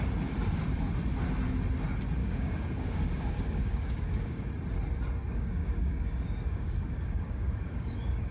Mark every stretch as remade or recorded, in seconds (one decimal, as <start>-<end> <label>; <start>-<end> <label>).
0.0-2.2 recorded; 2.2-4.5 remade; 4.5-5.2 recorded; 5.2-8.3 remade